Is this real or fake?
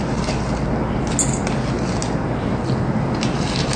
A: real